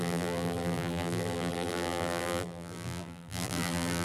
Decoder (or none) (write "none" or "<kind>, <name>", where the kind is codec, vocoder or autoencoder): vocoder, BigVGAN v2